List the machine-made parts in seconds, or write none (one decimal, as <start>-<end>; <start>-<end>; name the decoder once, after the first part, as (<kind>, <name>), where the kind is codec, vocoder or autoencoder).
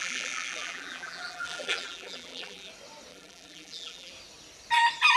0.0-2.7 (vocoder, BigVGAN v2); 3.1-4.1